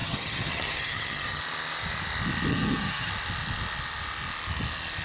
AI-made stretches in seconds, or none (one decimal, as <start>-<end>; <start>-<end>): 0.0-1.4; 2.5-3.1